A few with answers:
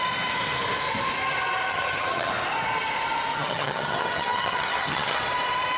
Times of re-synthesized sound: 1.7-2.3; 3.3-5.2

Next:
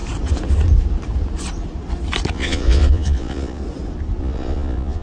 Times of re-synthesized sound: 2.3-3.6; 4.2-5.0

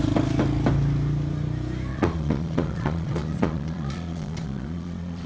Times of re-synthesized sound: 1.9-5.3

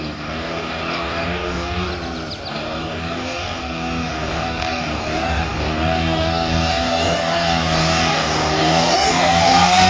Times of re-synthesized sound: 0.0-1.9; 2.5-9.9

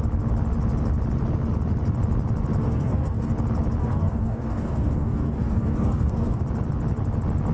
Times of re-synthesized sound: 2.6-3.3; 3.8-6.4

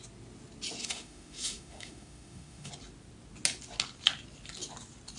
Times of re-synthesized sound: 0.8-2.7